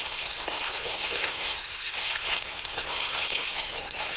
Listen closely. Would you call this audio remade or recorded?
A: remade